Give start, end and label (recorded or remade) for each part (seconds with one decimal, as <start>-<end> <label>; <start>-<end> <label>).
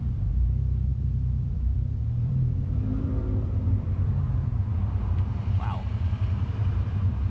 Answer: 0.0-7.3 remade